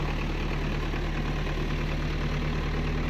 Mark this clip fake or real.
real